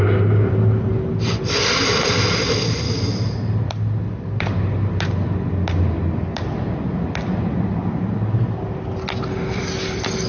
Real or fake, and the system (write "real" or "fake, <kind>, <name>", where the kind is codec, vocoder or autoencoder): real